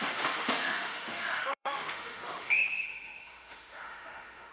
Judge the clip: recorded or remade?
remade